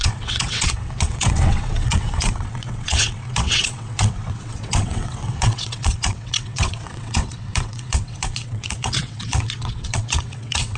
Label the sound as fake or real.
fake